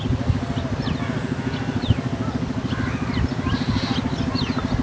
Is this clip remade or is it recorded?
recorded